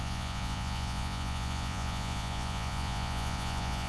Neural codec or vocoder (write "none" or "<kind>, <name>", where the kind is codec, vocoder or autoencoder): vocoder, Vocos